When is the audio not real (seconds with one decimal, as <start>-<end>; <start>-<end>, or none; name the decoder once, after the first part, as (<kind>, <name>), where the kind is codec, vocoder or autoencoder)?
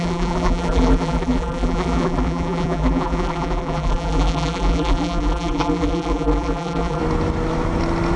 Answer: 0.0-7.0 (vocoder, BigVGAN v2)